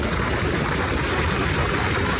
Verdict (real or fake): fake